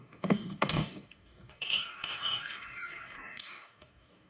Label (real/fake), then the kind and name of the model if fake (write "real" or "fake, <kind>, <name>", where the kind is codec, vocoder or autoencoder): fake, codec, DAC